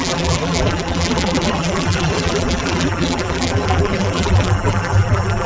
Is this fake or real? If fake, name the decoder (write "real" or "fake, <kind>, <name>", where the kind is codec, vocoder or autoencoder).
fake, vocoder, BigVGAN v2